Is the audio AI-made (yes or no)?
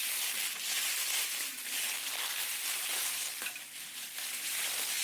yes